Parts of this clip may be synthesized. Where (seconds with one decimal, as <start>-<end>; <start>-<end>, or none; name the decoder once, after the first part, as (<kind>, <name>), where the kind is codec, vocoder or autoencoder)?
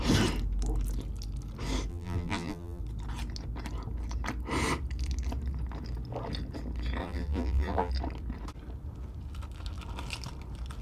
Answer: 1.9-2.8 (vocoder, BigVGAN v2); 7.0-7.9